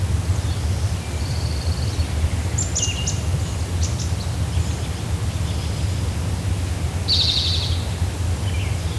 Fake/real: real